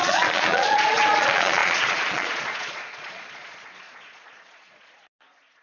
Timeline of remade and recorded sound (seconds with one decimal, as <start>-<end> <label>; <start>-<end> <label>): 0.0-5.6 remade